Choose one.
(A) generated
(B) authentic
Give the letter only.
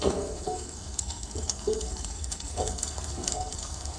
A